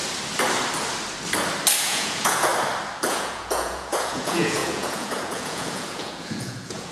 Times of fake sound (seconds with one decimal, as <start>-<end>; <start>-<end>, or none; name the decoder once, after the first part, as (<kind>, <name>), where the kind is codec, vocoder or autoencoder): 1.8-2.5 (vocoder, Vocos); 3.1-6.9